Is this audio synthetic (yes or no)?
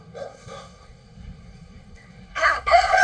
yes